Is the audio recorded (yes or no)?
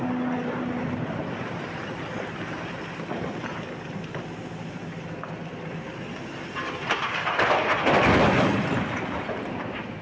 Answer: yes